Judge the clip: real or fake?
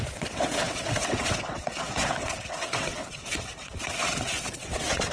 fake